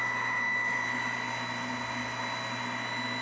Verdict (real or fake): real